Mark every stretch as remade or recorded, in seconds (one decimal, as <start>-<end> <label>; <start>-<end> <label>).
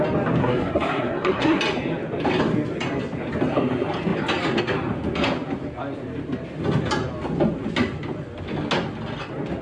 0.0-0.4 recorded; 0.4-1.6 remade; 1.6-9.6 recorded